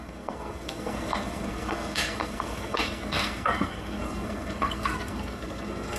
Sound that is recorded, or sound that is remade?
remade